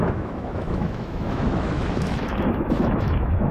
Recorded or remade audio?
remade